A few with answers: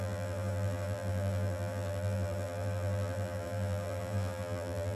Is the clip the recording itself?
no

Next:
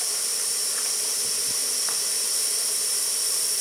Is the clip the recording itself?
no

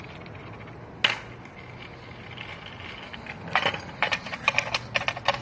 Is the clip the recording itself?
yes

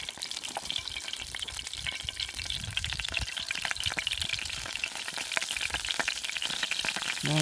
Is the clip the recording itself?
no